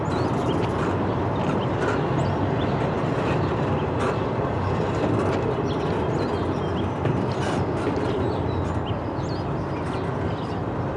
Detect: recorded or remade recorded